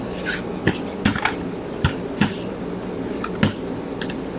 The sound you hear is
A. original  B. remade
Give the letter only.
A